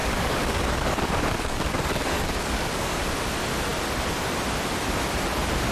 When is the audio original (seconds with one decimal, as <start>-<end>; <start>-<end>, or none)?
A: 3.0-5.7